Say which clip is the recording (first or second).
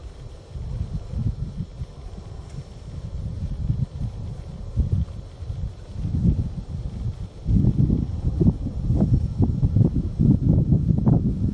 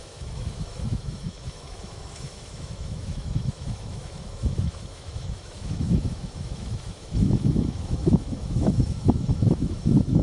first